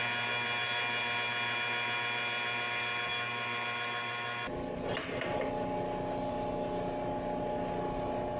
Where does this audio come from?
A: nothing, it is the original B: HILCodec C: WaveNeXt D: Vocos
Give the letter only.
A